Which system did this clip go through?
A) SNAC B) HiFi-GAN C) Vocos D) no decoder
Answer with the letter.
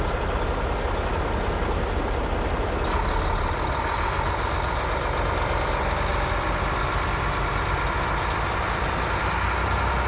D